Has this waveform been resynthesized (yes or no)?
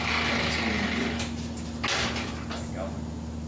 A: no